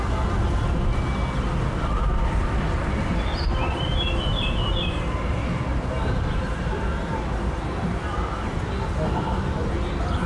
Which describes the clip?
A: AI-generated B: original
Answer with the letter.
B